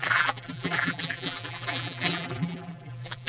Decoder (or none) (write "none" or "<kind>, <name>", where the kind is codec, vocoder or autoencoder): vocoder, BigVGAN v2